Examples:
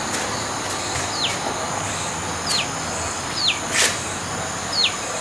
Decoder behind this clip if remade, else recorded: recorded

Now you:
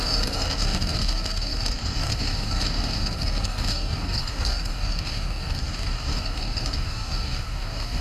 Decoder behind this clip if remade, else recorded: remade, codec, DAC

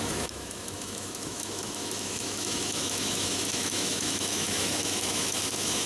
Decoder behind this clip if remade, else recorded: remade, autoencoder, DAC-VAE